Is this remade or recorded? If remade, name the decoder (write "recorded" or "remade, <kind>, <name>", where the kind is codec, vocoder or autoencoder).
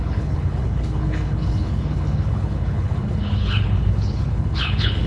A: remade, codec, HILCodec